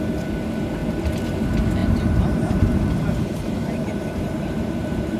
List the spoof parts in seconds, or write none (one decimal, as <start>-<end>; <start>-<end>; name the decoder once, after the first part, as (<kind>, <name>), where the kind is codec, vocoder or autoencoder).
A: 1.8-5.2 (vocoder, BigVGAN v2)